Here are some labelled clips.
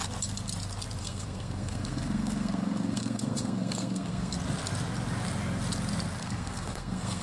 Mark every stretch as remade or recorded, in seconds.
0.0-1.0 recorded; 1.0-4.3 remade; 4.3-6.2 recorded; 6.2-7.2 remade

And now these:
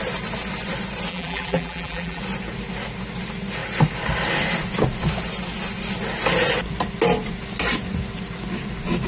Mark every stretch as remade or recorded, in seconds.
0.0-1.1 recorded; 1.1-2.2 remade; 2.2-9.1 recorded

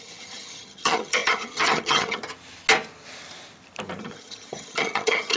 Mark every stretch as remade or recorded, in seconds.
0.0-2.2 remade; 2.2-4.0 recorded; 4.0-5.4 remade

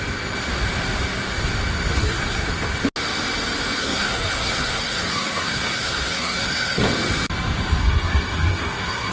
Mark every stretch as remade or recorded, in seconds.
0.0-1.9 recorded; 1.9-2.5 remade; 2.5-3.8 recorded; 3.8-6.8 remade; 6.8-7.8 recorded; 7.8-9.1 remade

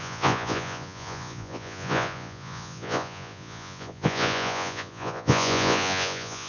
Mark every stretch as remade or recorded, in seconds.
0.0-6.5 remade

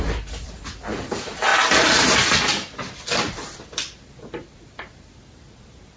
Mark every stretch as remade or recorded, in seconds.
0.0-1.5 recorded; 1.5-3.7 remade; 3.7-6.0 recorded

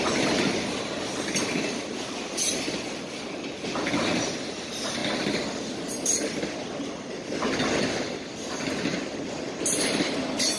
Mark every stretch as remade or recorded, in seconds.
0.0-10.6 recorded

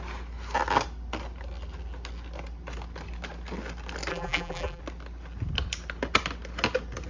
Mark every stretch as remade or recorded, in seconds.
0.0-4.1 recorded; 4.1-4.8 remade; 4.8-7.1 recorded